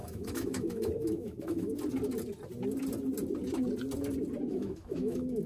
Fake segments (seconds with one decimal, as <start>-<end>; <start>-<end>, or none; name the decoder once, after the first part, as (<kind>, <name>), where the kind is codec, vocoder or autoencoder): 0.0-1.7 (autoencoder, DAC-VAE); 4.5-5.5